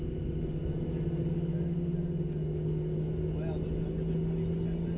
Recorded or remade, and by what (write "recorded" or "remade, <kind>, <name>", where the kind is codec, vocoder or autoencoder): recorded